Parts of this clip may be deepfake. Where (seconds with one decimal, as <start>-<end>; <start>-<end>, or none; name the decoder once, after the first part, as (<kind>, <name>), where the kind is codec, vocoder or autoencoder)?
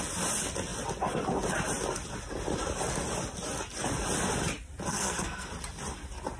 4.9-5.5 (codec, SNAC)